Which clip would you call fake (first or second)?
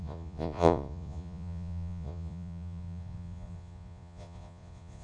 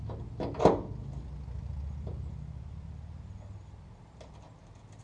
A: first